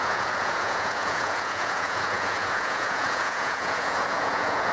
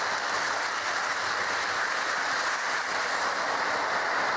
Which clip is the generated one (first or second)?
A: first